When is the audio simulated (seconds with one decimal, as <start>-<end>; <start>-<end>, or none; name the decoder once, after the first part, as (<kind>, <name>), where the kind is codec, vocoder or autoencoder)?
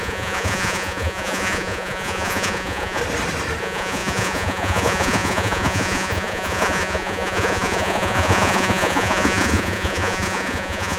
0.0-3.0 (vocoder, Vocos); 3.6-11.0